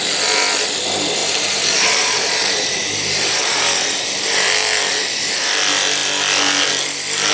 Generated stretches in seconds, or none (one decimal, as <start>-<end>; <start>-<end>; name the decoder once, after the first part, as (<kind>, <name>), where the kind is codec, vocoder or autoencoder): 1.2-5.5 (vocoder, BigVGAN v2)